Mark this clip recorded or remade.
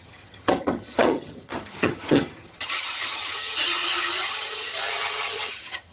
remade